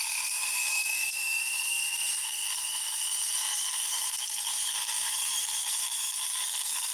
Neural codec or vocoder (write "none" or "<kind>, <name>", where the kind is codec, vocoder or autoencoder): codec, SNAC